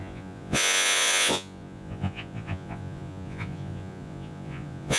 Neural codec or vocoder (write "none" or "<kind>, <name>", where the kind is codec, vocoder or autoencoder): vocoder, Vocos